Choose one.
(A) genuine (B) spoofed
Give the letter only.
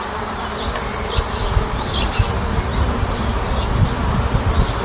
A